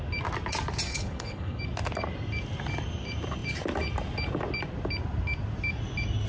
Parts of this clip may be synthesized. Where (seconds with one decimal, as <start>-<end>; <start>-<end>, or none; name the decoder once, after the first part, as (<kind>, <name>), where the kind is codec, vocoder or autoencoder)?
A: 0.9-1.6 (codec, HILCodec)

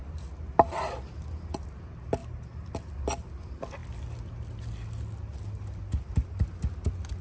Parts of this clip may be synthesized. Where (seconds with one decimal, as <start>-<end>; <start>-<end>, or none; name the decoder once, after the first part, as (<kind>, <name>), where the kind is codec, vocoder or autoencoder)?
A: none

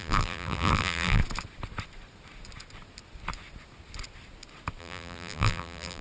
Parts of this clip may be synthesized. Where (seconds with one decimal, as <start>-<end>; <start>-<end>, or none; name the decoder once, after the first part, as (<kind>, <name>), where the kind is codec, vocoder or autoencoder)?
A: 0.0-1.2 (vocoder, BigVGAN v2); 4.8-6.0

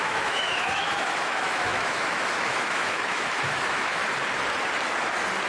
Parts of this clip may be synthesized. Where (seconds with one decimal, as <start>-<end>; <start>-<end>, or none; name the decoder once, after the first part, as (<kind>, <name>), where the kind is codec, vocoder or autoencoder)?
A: 0.0-4.0 (autoencoder, DAC-VAE)

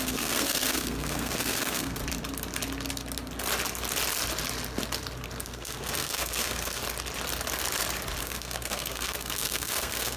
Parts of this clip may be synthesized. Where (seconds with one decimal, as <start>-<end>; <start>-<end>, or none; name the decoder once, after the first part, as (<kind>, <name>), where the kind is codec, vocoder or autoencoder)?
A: 0.0-2.0 (codec, SNAC); 5.4-6.8; 8.2-10.2